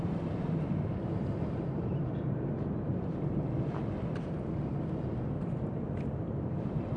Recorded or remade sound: remade